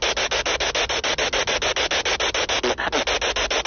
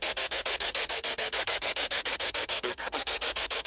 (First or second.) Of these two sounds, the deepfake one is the second